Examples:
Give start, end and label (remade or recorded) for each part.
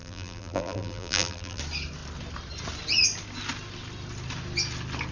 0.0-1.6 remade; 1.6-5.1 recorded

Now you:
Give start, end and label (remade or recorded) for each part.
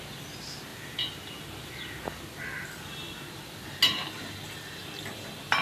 0.0-5.6 recorded